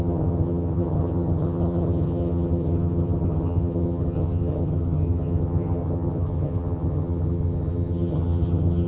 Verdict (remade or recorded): remade